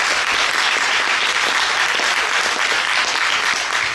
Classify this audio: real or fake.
real